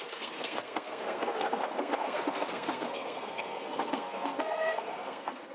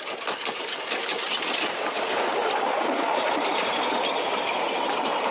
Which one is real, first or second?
second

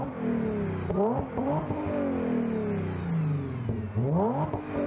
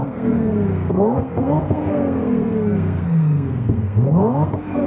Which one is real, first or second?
first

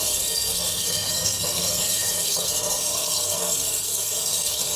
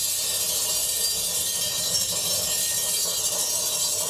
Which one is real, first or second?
second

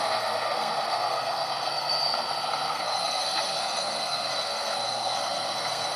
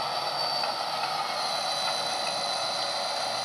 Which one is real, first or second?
second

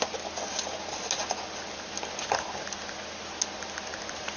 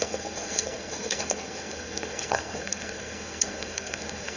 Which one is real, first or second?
first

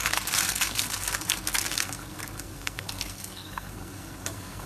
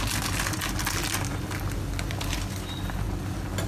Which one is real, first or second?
second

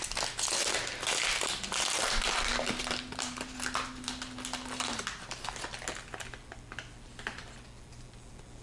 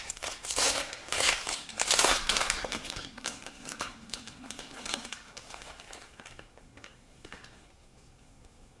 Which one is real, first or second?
first